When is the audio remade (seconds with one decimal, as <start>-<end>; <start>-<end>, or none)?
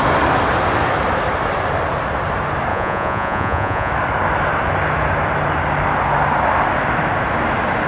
2.7-3.9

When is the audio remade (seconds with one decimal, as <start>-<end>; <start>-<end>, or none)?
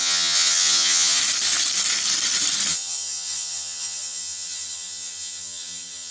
0.0-1.2; 2.7-6.1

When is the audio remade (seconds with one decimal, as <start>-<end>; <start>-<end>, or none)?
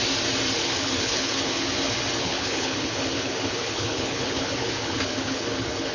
0.6-1.7; 2.2-5.9